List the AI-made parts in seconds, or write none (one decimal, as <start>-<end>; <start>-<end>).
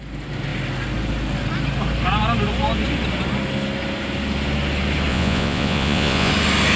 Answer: 5.1-6.3